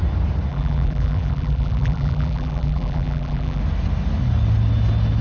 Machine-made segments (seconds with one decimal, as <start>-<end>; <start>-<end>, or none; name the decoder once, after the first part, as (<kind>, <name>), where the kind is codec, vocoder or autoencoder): 0.5-3.6 (vocoder, BigVGAN v2)